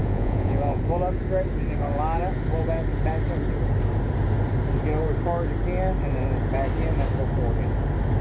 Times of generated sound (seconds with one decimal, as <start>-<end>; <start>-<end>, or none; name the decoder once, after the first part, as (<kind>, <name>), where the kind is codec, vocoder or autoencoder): 0.0-0.8 (vocoder, Vocos)